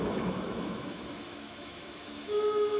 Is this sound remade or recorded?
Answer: remade